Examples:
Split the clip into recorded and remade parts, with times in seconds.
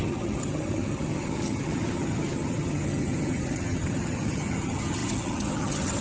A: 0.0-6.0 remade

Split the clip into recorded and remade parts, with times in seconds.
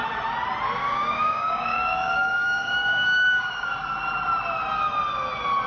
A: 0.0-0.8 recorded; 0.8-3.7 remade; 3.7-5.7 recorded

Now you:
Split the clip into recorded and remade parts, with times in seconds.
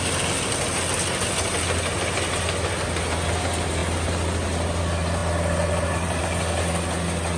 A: 0.0-7.4 recorded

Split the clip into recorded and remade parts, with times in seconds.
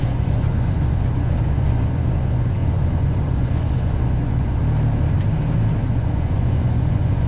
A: 0.0-4.6 remade; 4.6-5.8 recorded; 5.8-7.3 remade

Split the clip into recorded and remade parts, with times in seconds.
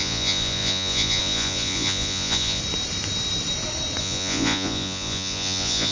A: 0.0-2.6 remade; 2.6-4.0 recorded; 4.0-5.9 remade